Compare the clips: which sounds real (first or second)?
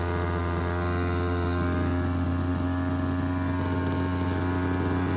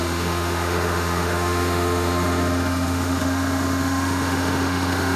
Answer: first